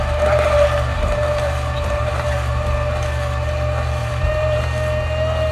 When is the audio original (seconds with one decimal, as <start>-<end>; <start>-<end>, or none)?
0.0-0.9; 2.5-4.0; 4.6-5.5